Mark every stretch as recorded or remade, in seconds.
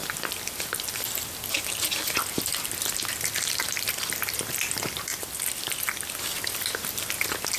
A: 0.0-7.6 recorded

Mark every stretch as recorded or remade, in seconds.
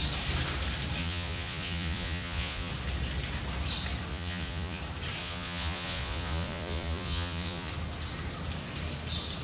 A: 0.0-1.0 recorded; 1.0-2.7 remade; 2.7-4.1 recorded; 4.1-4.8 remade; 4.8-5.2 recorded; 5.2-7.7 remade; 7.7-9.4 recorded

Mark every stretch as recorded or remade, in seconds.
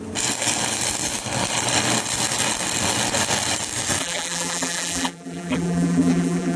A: 0.0-4.0 recorded; 4.0-6.6 remade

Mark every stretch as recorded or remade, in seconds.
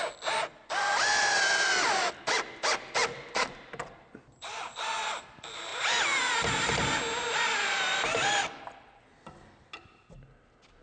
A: 0.0-1.2 recorded; 1.2-1.7 remade; 1.7-3.0 recorded; 3.0-4.9 remade; 4.9-10.8 recorded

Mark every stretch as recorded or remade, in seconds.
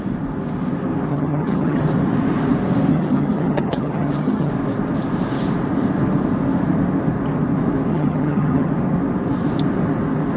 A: 0.0-1.1 recorded; 1.1-1.8 remade; 1.8-2.9 recorded; 2.9-4.5 remade; 4.5-7.9 recorded; 7.9-8.7 remade; 8.7-10.4 recorded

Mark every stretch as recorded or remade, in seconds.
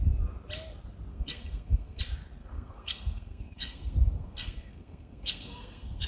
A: 0.0-1.1 recorded; 1.1-2.0 remade; 2.0-2.4 recorded; 2.4-6.1 remade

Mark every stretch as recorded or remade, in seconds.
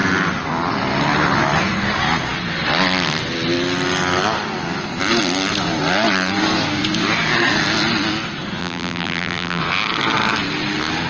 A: 0.0-8.6 recorded; 8.6-9.6 remade; 9.6-11.1 recorded